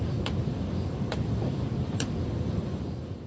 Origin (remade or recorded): remade